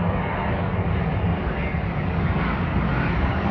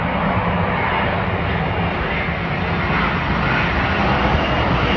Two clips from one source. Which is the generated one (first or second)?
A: first